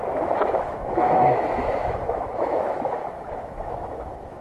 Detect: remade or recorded remade